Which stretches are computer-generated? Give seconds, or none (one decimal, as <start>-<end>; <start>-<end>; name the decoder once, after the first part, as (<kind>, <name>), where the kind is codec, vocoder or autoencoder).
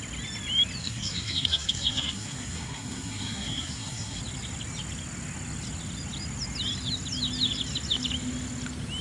0.8-4.2 (codec, SNAC)